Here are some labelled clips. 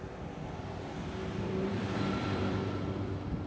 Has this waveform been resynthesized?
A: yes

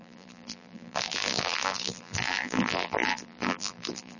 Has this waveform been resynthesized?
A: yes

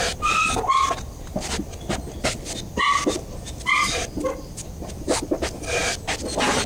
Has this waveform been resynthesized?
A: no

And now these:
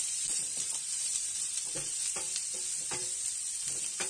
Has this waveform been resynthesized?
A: yes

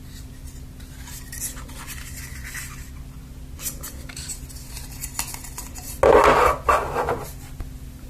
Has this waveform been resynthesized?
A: no